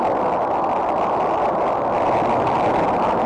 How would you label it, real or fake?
real